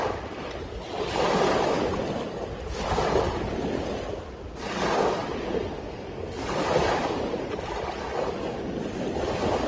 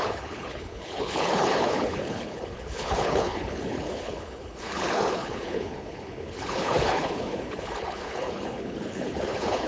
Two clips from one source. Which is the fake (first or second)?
second